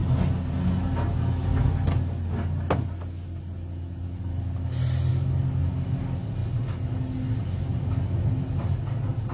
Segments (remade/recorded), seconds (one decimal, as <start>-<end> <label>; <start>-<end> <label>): 0.0-9.3 recorded